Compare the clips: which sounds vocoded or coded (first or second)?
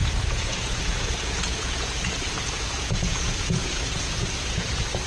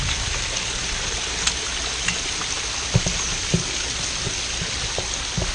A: first